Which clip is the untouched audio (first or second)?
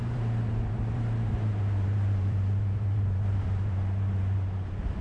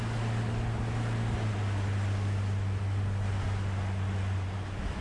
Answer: second